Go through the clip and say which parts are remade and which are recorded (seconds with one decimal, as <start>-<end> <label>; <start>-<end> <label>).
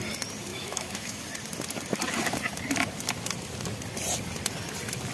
0.0-0.5 recorded; 0.5-1.2 remade; 1.2-5.1 recorded